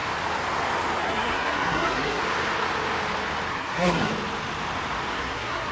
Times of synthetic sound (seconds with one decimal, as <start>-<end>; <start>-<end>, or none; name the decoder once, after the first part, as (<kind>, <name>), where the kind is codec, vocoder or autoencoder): 1.0-2.2 (codec, SNAC); 3.5-4.1; 5.1-5.7